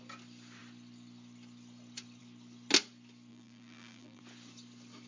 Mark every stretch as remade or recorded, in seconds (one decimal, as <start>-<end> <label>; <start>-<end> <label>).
0.0-3.3 recorded; 3.3-4.2 remade; 4.2-5.1 recorded